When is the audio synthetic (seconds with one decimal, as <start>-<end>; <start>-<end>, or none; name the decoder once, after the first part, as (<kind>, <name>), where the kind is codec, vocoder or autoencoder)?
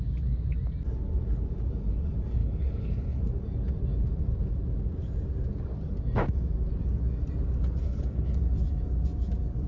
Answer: 2.4-3.2 (codec, HILCodec); 7.8-8.4